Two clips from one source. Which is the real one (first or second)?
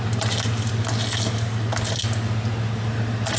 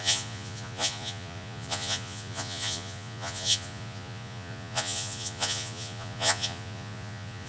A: first